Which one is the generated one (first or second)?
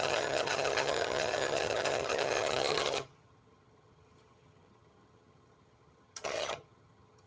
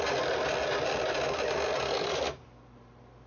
first